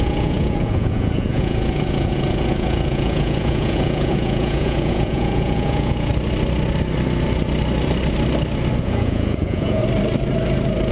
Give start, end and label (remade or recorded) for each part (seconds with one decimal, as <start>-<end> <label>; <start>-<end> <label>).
0.0-6.1 remade; 6.1-8.8 recorded; 8.8-9.8 remade; 9.8-10.9 recorded